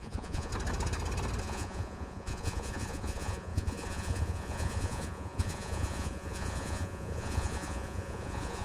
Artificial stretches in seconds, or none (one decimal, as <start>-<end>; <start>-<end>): 0.0-0.5; 1.4-8.6